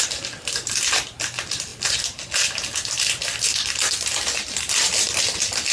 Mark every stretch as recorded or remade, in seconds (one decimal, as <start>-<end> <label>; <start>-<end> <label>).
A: 0.0-5.7 recorded